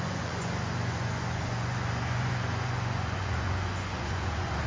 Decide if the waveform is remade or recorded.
remade